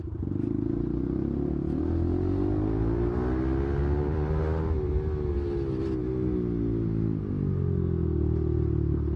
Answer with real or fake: real